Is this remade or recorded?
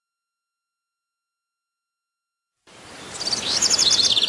recorded